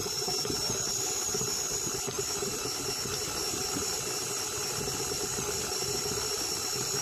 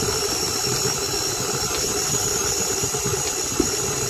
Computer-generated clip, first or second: second